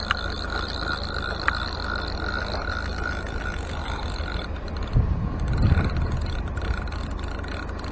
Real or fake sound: real